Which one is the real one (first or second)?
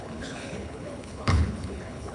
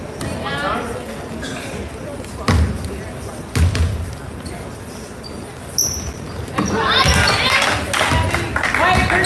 second